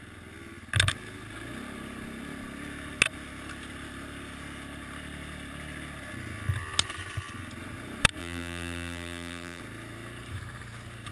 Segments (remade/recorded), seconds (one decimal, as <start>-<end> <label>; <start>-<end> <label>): 0.0-8.2 recorded; 8.2-9.6 remade; 9.6-11.1 recorded